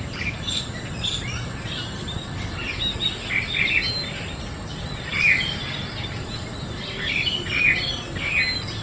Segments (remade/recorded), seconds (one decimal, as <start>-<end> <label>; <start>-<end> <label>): 0.0-8.8 recorded